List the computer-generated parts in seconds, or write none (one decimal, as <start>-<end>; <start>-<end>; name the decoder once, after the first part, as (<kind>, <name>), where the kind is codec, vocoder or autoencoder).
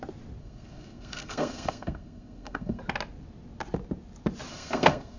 0.4-2.8 (codec, SNAC); 4.5-5.2